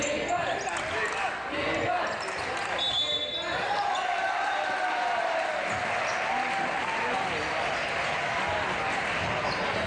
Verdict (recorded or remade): recorded